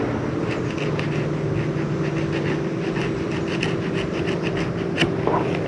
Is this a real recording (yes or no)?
yes